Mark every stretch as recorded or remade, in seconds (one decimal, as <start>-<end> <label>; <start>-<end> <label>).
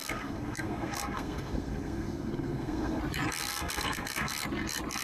0.0-3.0 remade; 3.0-3.5 recorded; 3.5-4.3 remade; 4.3-5.0 recorded